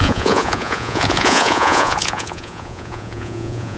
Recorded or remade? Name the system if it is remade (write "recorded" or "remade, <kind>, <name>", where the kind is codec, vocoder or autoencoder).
remade, vocoder, Vocos